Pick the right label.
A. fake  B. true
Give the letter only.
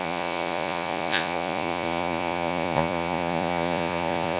A